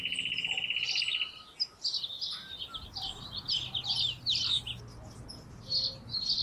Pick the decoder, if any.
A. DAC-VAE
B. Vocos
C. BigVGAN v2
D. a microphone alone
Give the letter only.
D